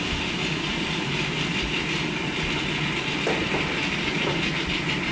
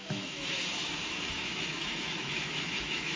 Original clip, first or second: first